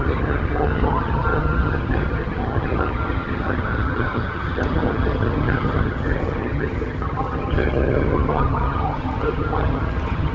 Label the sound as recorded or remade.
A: remade